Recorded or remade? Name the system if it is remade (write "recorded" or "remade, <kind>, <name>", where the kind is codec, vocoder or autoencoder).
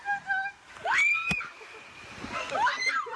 recorded